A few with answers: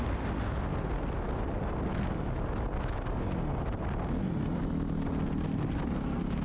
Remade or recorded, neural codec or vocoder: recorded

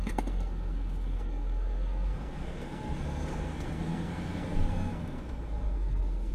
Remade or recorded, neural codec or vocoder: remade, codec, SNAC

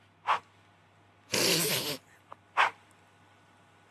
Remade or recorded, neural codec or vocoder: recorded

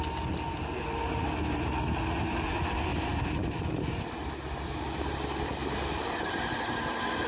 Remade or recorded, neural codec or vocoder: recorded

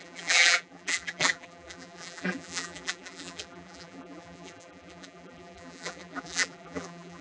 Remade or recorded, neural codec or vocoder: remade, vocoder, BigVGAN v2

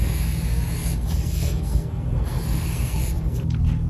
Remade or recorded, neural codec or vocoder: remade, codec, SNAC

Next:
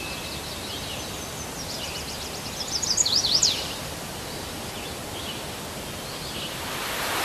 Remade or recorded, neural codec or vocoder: recorded